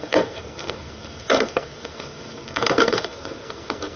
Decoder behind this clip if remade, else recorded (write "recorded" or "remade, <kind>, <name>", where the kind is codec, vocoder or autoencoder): remade, codec, SNAC